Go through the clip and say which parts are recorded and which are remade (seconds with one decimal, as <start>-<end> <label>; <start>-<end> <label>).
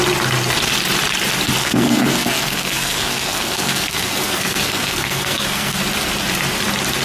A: 0.0-1.6 recorded; 1.6-5.8 remade; 5.8-7.0 recorded